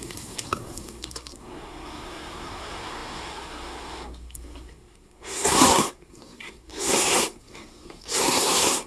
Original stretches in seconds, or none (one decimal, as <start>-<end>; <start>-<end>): none